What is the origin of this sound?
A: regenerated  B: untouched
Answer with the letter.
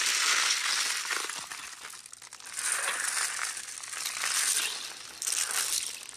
B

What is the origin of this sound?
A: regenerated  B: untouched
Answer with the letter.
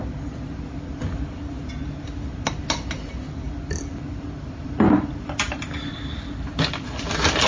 B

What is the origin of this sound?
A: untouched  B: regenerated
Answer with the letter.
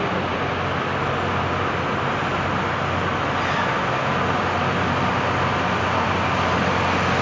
A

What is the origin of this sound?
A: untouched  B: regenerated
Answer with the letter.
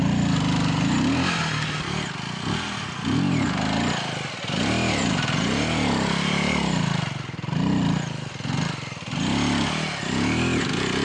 A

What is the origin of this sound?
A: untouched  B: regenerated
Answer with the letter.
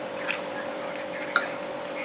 B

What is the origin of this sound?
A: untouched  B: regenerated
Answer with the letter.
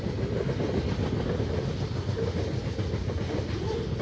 A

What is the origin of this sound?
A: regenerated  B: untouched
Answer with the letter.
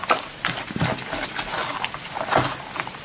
B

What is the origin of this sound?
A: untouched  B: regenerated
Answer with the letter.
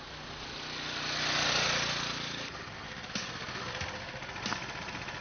A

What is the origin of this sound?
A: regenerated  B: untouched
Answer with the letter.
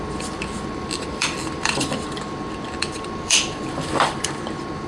A